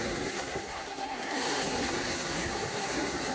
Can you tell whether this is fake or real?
fake